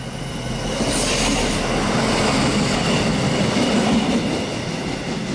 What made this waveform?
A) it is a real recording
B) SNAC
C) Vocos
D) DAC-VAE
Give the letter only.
A